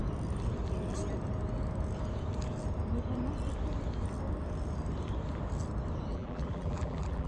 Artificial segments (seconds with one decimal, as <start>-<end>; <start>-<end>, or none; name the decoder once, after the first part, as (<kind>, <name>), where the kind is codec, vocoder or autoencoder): 6.1-7.3 (vocoder, BigVGAN v2)